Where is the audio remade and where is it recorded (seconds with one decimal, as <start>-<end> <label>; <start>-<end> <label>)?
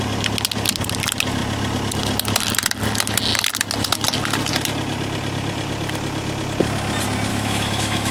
0.0-7.3 recorded; 7.3-8.1 remade